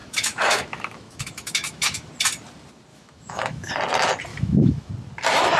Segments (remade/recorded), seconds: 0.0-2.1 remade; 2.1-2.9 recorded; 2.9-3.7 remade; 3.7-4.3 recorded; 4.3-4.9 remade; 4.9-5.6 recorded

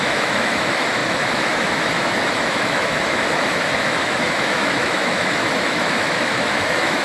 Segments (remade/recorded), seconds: 0.0-7.0 remade

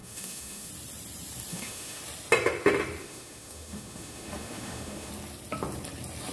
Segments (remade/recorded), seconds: 0.0-0.7 remade; 0.7-1.5 recorded; 1.5-2.0 remade; 2.0-3.0 recorded; 3.0-5.1 remade; 5.1-6.3 recorded

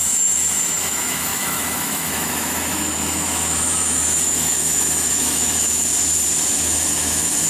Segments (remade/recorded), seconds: 0.0-5.9 remade; 5.9-6.5 recorded; 6.5-7.5 remade

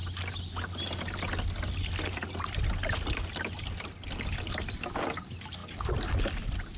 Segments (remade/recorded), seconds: 0.0-6.8 recorded

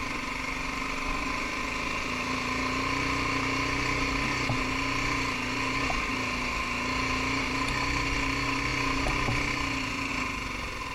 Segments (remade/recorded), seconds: 0.0-10.9 recorded